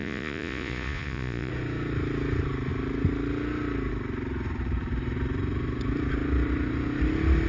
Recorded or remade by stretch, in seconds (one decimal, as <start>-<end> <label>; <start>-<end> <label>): 0.0-1.5 remade; 1.5-7.5 recorded